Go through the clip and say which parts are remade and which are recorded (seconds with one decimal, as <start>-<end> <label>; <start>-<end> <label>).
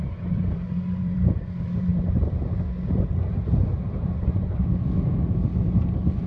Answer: 0.0-1.9 remade; 1.9-5.4 recorded; 5.4-6.3 remade